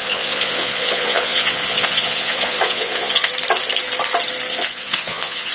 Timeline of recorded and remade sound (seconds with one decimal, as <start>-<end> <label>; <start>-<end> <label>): 0.0-3.3 remade; 3.3-4.5 recorded; 4.5-5.5 remade